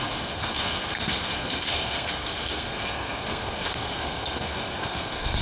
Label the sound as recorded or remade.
remade